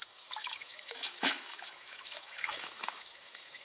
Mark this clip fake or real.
fake